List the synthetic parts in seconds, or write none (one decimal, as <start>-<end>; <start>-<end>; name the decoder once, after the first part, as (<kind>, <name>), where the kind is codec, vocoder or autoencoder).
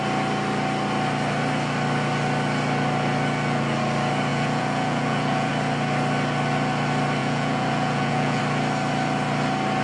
4.3-5.5 (vocoder, Vocos); 7.2-8.4